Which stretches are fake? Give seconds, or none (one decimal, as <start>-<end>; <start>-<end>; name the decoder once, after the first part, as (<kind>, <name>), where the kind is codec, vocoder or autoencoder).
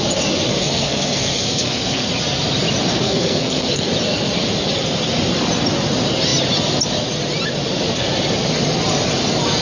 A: 0.5-2.1 (codec, SNAC); 2.9-3.9